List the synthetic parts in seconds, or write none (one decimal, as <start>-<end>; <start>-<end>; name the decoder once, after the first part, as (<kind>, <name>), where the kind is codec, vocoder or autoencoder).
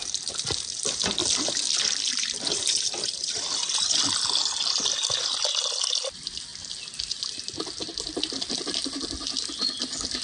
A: none